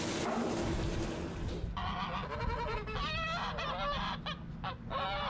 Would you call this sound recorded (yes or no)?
yes